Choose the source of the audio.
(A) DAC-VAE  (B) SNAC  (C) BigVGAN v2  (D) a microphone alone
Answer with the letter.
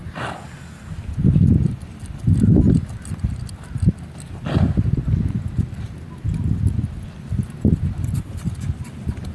D